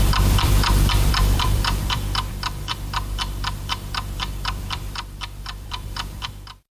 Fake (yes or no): yes